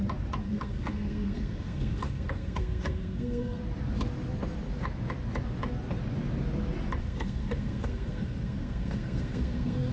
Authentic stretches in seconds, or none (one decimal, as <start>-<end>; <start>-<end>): 0.0-0.4; 3.6-7.0